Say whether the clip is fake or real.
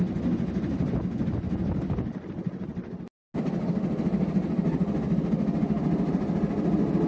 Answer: real